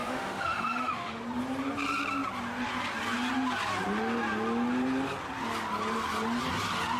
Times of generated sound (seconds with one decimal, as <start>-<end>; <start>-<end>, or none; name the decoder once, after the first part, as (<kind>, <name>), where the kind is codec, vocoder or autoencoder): 0.0-1.2 (autoencoder, DAC-VAE)